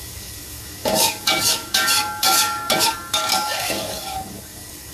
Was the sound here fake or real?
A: fake